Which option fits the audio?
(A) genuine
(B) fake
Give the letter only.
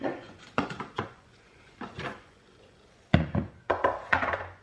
B